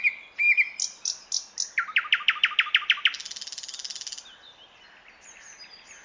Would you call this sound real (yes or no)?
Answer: yes